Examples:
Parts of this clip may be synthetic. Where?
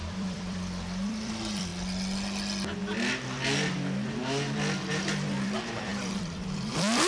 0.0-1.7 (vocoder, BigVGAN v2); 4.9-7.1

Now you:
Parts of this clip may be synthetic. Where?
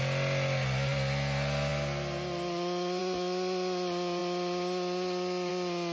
none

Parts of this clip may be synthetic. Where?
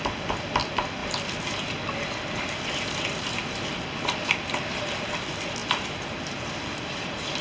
0.0-7.4 (vocoder, BigVGAN v2)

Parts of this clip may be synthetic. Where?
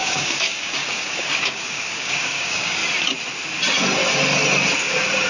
0.0-2.8 (codec, DAC)